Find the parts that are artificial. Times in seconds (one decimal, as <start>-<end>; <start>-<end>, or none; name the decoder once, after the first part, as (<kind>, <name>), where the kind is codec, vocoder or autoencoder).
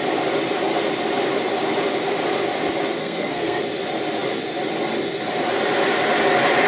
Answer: 3.0-3.6 (codec, SNAC)